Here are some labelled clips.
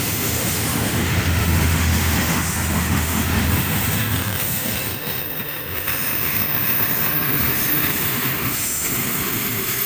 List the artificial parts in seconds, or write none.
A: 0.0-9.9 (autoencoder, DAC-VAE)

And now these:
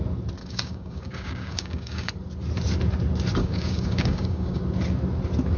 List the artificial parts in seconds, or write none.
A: 0.4-2.1 (codec, DAC); 3.4-4.6

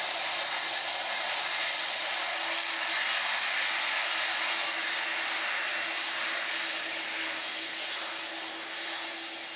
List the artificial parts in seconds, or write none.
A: 2.3-2.9 (codec, DAC)

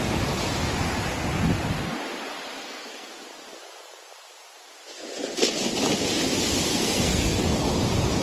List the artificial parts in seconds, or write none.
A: 2.6-3.1 (codec, SNAC); 6.7-7.4

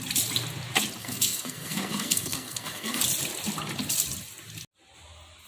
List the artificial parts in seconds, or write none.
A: 1.0-3.0 (codec, SNAC)

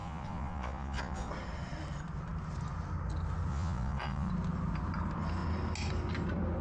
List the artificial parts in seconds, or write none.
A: 0.0-1.3 (vocoder, Vocos); 3.5-4.3

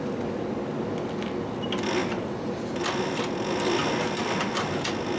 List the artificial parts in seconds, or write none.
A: none